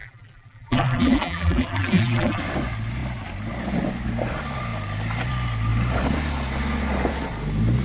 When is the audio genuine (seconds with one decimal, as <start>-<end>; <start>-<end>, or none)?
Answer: 2.4-7.8